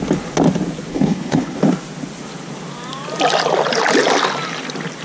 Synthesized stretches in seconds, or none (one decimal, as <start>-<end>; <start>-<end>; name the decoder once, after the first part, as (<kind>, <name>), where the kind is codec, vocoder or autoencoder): 0.9-1.6 (codec, HILCodec)